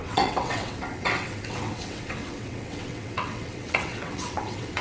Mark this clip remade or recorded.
remade